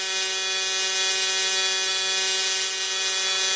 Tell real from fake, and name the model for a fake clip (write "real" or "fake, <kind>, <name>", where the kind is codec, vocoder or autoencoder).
real